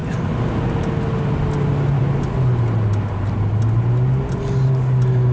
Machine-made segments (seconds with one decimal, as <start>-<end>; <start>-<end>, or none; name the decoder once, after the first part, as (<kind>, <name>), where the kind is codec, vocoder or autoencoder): none